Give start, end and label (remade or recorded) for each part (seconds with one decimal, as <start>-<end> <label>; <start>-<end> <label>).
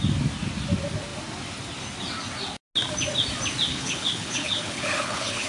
0.0-3.7 recorded; 3.7-5.5 remade